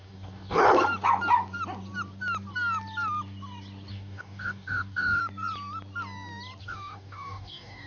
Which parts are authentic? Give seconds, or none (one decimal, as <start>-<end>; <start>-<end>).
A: 0.6-3.9; 5.2-6.6